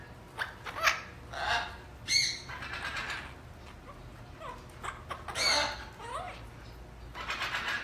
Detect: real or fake real